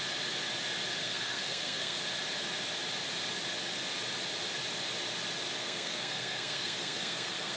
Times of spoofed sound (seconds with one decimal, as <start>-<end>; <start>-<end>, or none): 1.0-2.0; 5.6-7.6